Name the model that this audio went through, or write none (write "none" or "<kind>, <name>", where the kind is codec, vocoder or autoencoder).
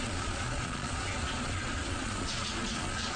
vocoder, Vocos